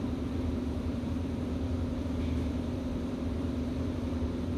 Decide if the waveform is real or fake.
fake